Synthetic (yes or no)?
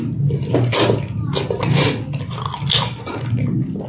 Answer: no